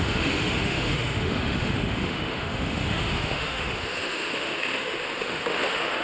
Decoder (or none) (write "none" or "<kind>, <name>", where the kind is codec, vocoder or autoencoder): autoencoder, DAC-VAE